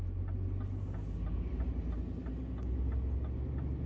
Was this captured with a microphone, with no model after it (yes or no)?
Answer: yes